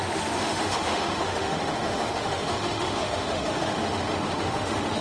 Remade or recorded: remade